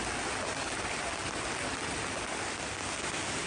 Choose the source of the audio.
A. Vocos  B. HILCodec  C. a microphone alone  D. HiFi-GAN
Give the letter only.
C